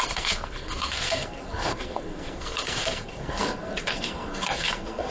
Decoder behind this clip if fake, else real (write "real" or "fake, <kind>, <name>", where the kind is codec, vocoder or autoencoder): fake, codec, SNAC